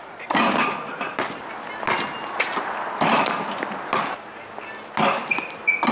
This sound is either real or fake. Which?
real